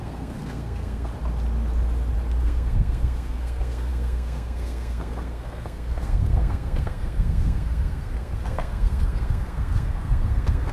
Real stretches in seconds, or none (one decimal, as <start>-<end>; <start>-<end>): 1.1-2.4